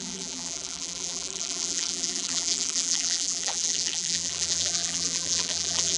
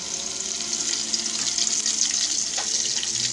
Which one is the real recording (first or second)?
second